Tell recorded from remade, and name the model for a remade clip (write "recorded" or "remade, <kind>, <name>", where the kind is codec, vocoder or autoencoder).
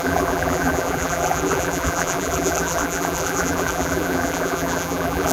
remade, vocoder, BigVGAN v2